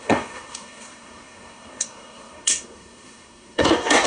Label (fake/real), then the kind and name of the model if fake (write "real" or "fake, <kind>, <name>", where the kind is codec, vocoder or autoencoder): fake, codec, SNAC